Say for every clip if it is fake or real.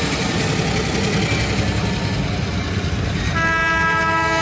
real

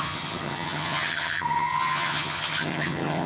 fake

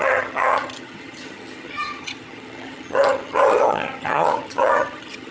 fake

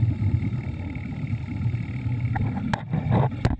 real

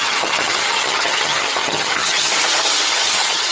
fake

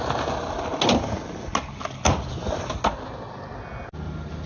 real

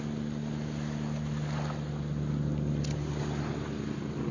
real